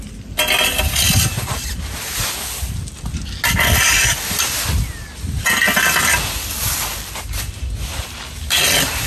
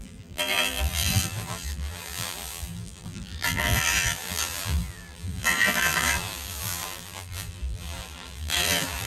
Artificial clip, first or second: second